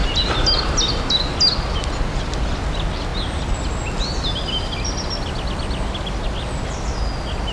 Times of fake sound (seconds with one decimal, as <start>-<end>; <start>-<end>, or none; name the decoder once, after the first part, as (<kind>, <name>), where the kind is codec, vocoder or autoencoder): none